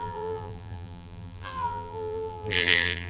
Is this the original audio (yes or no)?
no